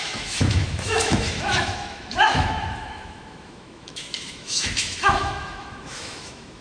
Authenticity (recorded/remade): remade